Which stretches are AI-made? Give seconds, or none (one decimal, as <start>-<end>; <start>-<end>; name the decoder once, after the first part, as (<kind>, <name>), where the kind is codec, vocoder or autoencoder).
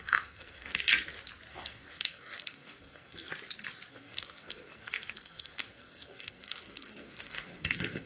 0.0-0.9 (codec, SNAC); 1.5-3.3; 3.9-8.1